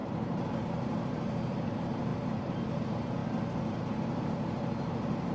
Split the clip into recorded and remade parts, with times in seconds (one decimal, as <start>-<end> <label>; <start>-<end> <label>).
0.0-3.2 remade; 3.2-3.8 recorded; 3.8-5.3 remade